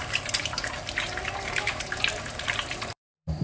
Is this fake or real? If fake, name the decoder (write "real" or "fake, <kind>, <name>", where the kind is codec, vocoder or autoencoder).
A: fake, vocoder, BigVGAN v2